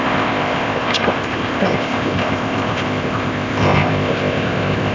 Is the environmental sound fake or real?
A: fake